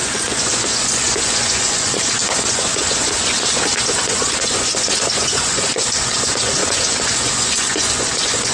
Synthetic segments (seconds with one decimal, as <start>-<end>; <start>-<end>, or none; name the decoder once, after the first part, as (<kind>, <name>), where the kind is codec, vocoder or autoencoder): 0.0-8.5 (vocoder, Vocos)